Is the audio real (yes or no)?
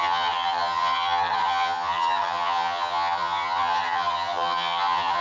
no